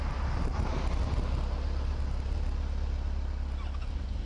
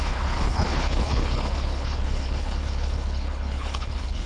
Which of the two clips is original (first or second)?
first